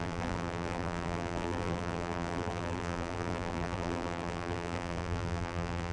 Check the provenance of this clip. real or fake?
fake